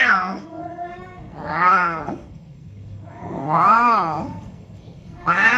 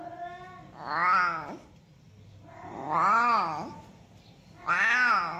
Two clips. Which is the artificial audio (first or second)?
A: first